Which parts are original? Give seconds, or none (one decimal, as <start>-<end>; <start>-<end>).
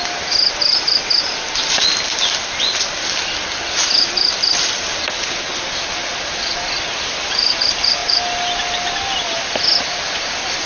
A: 0.0-10.7